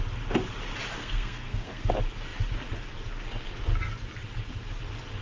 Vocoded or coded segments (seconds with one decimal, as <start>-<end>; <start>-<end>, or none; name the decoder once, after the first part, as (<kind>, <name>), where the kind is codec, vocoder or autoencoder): 1.0-1.9 (codec, SNAC)

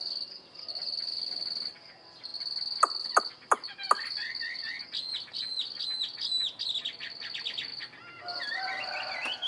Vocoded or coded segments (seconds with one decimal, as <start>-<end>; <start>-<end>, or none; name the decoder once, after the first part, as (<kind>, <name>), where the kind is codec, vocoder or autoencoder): none

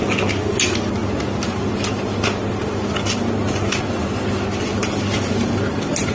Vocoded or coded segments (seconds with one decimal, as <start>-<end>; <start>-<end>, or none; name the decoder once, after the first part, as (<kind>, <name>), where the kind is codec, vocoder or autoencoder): none

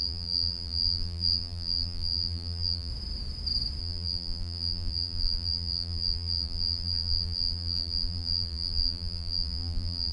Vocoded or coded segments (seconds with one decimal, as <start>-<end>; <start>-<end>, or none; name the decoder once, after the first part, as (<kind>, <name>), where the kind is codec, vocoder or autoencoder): 0.0-2.9 (vocoder, BigVGAN v2); 3.8-10.1

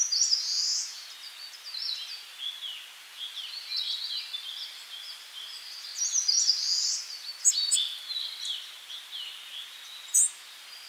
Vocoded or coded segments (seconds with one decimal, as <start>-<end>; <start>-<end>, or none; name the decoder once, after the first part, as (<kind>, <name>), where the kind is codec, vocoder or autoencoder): none

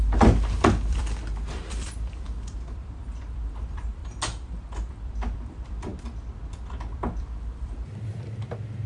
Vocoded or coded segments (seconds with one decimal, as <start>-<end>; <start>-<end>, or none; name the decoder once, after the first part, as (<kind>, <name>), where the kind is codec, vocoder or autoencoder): 0.0-4.0 (vocoder, BigVGAN v2); 4.9-5.9; 7.2-8.9

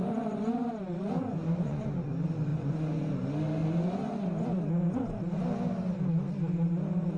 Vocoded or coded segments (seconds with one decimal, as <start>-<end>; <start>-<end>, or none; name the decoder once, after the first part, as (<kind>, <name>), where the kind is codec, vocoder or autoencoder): 1.4-2.1 (vocoder, Vocos); 2.5-3.0